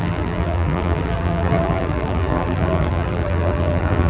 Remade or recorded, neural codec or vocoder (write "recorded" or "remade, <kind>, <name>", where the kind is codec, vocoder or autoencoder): remade, vocoder, BigVGAN v2